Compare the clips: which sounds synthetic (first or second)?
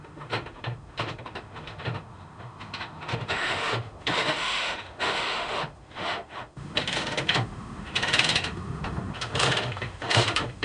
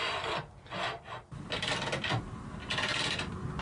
first